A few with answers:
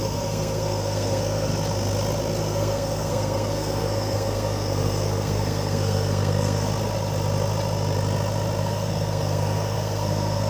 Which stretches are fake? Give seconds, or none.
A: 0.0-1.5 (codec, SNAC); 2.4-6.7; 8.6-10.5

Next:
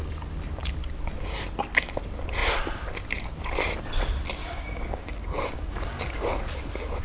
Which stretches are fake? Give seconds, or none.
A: 4.4-6.4 (codec, DAC)

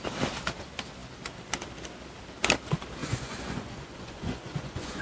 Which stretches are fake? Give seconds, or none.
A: 3.0-5.0 (vocoder, Vocos)

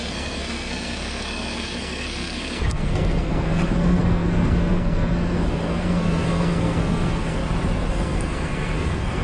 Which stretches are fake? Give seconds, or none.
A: 0.0-7.4 (codec, SNAC); 7.9-9.2

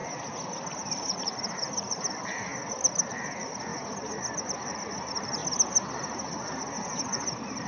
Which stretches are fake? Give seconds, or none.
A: 0.9-2.5 (vocoder, BigVGAN v2); 3.0-3.7; 4.4-5.4; 6.3-7.7

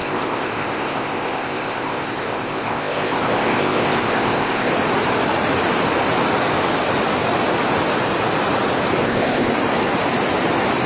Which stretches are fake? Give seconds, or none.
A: 0.0-4.7 (codec, ZipCodec); 9.0-9.5